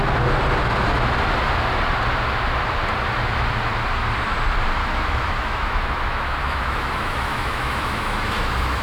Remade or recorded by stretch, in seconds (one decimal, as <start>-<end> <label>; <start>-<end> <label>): 0.0-4.8 recorded; 4.8-8.8 remade